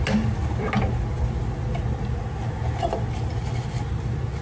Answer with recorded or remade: recorded